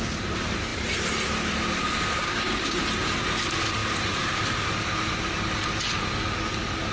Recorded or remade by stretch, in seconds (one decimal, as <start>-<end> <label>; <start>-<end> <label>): 0.0-2.2 recorded; 2.2-2.8 remade; 2.8-6.9 recorded